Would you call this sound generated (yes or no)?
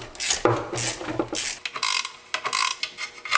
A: no